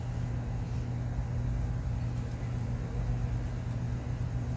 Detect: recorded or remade recorded